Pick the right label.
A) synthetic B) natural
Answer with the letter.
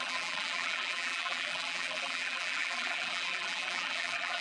A